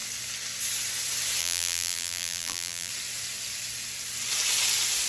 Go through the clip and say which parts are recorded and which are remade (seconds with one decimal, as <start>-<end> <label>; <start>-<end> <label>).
0.0-1.4 recorded; 1.4-2.9 remade; 2.9-5.1 recorded